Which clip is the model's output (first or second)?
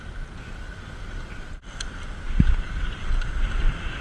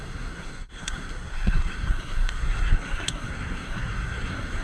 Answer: second